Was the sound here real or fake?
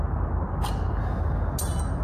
real